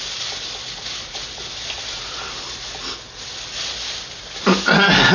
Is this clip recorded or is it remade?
recorded